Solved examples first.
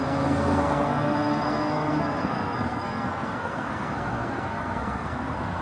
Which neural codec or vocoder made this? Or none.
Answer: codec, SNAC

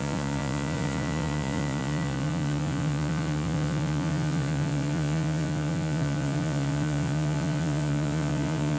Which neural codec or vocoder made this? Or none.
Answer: vocoder, Vocos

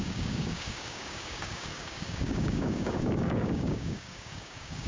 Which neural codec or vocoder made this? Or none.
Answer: codec, DAC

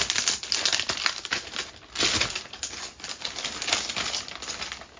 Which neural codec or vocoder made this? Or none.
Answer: none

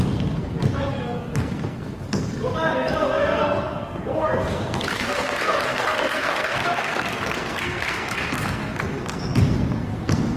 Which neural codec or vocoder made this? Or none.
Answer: codec, SNAC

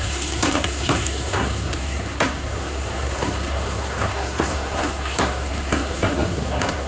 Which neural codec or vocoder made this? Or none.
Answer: codec, SNAC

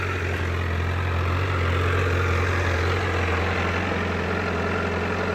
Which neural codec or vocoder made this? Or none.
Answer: none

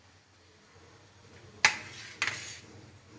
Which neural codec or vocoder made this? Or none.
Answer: none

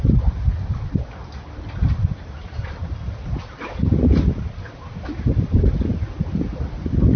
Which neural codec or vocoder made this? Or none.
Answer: none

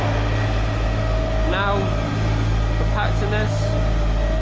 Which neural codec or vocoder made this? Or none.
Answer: none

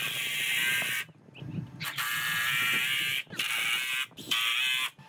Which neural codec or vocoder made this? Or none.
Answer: none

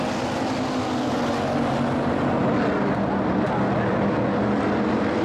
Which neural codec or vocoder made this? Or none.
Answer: none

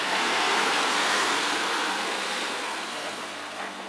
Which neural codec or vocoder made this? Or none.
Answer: codec, SNAC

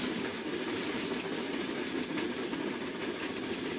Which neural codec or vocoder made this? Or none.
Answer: none